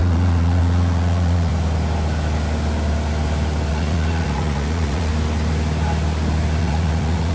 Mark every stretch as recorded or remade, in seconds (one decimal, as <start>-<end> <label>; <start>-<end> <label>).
0.0-1.5 remade; 1.5-3.7 recorded; 3.7-5.1 remade; 5.1-6.6 recorded; 6.6-7.3 remade

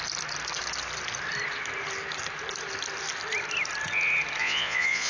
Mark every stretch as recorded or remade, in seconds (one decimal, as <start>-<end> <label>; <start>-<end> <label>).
0.0-4.4 recorded; 4.4-5.1 remade